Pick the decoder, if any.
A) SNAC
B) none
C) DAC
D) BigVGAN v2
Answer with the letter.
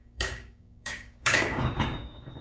C